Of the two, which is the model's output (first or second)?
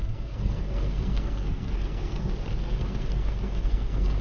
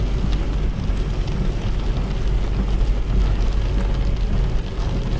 first